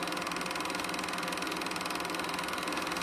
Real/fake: real